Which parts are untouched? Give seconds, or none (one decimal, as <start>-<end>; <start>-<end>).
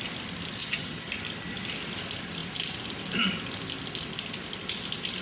0.0-0.6; 1.1-5.2